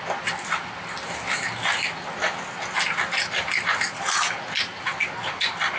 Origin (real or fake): real